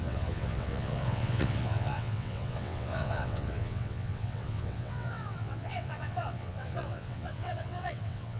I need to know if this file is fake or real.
fake